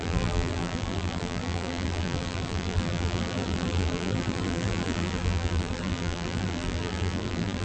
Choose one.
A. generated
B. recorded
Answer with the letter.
A